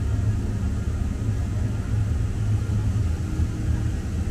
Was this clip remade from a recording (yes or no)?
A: no